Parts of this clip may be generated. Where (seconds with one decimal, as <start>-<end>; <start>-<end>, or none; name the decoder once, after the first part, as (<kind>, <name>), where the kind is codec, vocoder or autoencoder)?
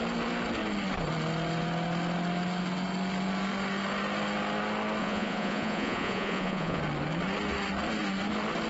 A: 5.0-6.8 (vocoder, Vocos)